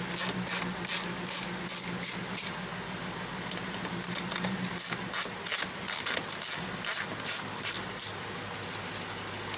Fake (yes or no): no